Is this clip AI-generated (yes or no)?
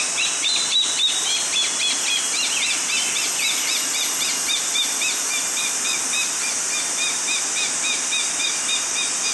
no